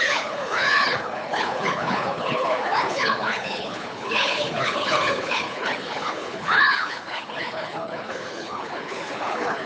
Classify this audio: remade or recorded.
remade